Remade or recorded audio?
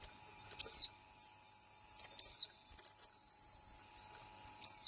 recorded